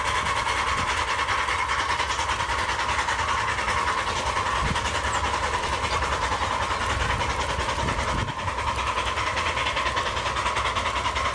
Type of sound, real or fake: real